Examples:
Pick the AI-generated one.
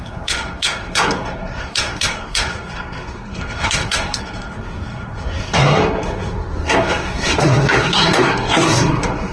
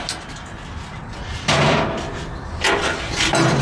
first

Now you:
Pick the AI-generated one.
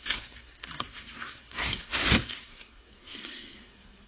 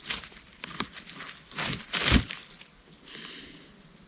first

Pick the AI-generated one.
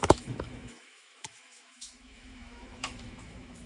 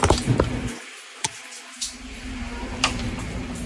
first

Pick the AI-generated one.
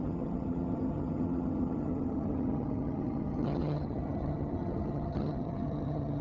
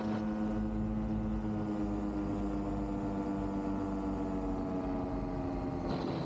first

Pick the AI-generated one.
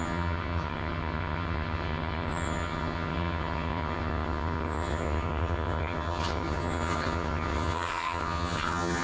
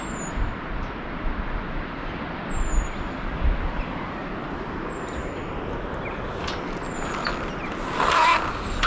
first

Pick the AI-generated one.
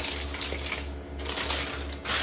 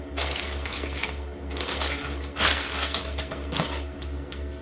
second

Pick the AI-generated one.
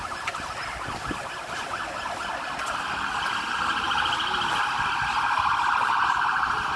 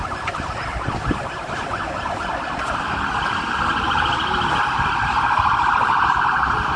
second